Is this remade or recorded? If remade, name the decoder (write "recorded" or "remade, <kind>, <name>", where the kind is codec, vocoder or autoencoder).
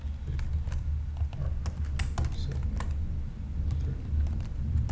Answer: recorded